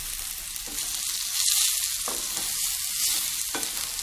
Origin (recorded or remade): recorded